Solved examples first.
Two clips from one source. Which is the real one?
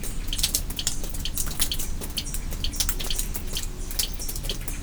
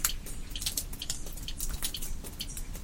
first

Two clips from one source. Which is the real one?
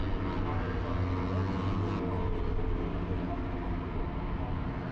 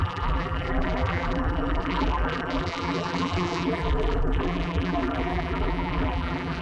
first